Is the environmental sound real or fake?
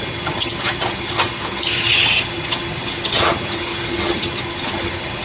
fake